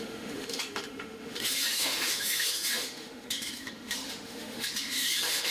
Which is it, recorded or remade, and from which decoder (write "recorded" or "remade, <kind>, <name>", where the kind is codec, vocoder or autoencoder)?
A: remade, autoencoder, DAC-VAE